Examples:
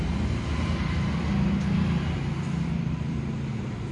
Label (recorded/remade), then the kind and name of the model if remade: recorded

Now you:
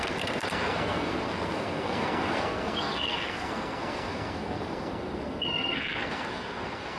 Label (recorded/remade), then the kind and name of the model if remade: remade, codec, SNAC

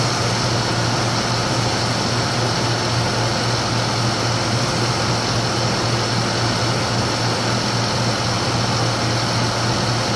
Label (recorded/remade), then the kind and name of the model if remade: recorded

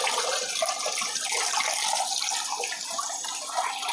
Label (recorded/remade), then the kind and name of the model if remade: recorded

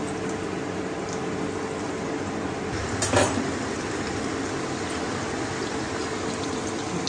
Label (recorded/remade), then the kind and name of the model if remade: recorded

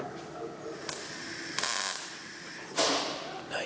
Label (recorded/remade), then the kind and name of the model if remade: recorded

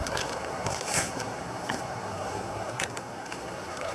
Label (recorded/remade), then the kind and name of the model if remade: remade, codec, SNAC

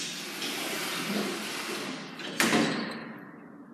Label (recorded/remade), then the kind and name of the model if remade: recorded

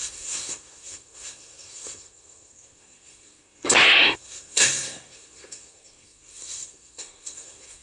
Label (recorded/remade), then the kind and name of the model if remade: remade, codec, SNAC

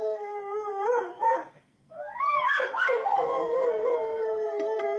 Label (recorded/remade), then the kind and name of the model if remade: remade, codec, SNAC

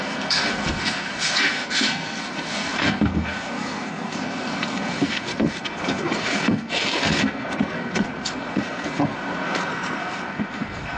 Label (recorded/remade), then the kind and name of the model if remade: remade, codec, SNAC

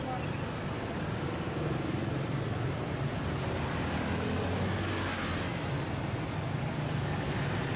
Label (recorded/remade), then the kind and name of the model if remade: recorded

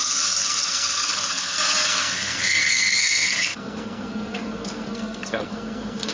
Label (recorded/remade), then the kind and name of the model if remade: remade, codec, SNAC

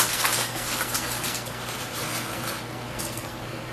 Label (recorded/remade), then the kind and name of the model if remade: remade, codec, SNAC